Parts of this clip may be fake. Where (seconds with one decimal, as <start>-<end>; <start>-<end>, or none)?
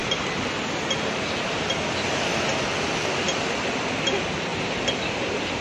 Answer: 3.4-4.5